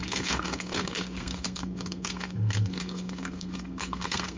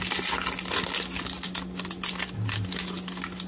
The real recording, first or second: second